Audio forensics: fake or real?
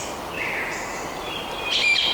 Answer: real